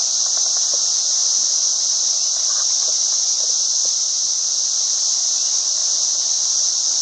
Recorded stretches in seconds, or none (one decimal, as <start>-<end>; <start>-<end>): 0.0-1.2; 4.3-7.0